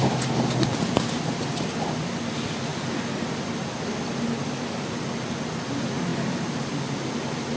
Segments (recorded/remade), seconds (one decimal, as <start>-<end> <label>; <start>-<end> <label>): 0.0-7.6 recorded